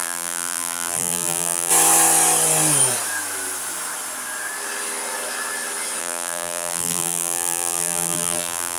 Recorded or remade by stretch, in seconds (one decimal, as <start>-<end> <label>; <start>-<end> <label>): 0.0-1.7 remade; 1.7-6.0 recorded; 6.0-8.8 remade